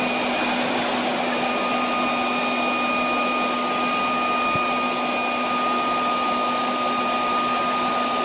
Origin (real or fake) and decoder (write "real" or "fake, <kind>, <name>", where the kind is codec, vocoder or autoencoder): real